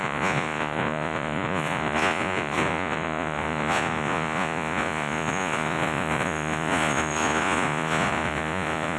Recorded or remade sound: remade